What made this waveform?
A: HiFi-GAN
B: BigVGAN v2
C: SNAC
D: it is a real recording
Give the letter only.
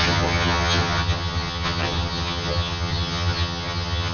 A